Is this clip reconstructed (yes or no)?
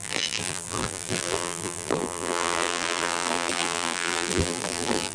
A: yes